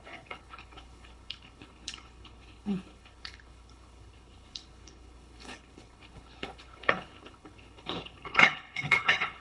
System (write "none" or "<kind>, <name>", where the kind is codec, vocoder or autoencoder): codec, HILCodec